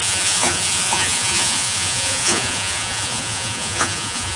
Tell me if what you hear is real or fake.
fake